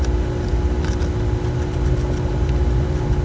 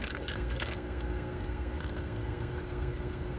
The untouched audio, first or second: first